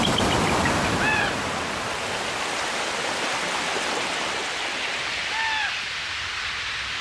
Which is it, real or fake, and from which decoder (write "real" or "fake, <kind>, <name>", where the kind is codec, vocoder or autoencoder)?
real